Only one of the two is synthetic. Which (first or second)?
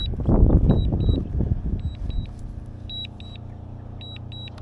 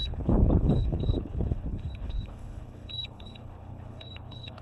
second